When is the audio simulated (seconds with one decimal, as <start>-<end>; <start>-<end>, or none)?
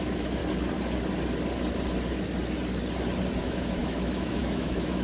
0.0-0.4; 3.4-5.0